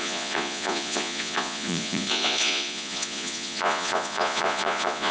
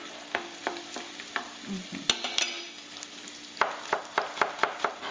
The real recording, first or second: second